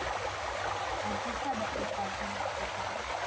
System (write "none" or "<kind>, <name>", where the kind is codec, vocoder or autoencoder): none